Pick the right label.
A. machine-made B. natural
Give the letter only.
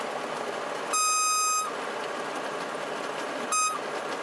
B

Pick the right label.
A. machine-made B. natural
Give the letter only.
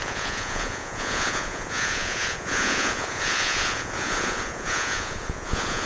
A